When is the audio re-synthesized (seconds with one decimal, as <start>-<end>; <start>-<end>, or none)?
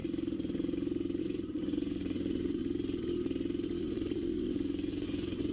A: 1.2-2.6; 3.8-5.5